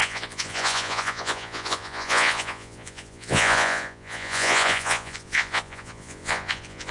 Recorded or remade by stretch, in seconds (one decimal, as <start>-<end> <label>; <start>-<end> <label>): 0.0-6.9 remade